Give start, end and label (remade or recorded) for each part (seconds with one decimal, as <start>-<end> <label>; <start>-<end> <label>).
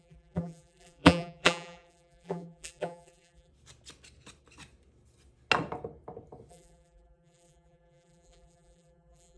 0.0-3.5 remade; 3.5-6.5 recorded; 6.5-9.4 remade